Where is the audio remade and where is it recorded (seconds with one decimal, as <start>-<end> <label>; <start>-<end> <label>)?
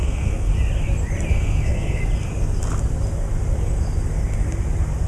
0.0-0.5 remade; 0.5-1.3 recorded; 1.3-2.0 remade; 2.0-5.1 recorded